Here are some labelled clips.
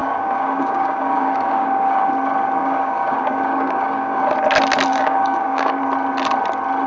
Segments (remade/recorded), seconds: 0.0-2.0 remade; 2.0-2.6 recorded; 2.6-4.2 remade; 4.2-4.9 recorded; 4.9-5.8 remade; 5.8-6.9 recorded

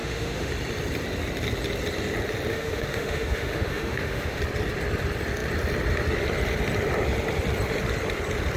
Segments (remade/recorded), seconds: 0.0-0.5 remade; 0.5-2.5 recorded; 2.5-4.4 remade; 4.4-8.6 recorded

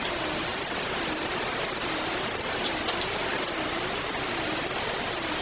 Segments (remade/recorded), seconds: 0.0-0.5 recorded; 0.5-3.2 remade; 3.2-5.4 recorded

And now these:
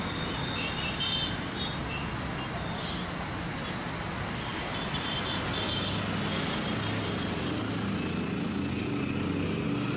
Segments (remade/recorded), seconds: 0.0-10.0 recorded

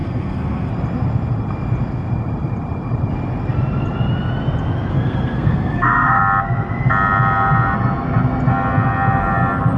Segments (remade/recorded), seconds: 0.0-0.7 remade; 0.7-4.9 recorded; 4.9-6.2 remade; 6.2-9.8 recorded

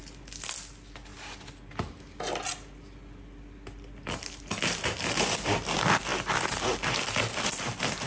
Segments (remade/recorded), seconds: 0.0-8.1 recorded

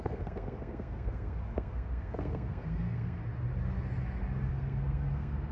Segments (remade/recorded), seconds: 0.0-3.2 remade; 3.2-4.5 recorded; 4.5-5.5 remade